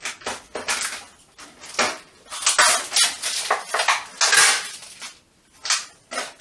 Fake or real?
real